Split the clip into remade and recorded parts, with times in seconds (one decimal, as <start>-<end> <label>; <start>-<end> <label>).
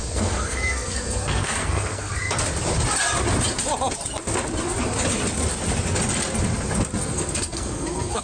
0.0-2.1 remade; 2.1-7.0 recorded; 7.0-8.2 remade